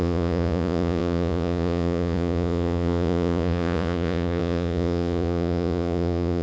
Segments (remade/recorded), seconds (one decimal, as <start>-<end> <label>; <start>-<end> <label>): 0.0-6.4 remade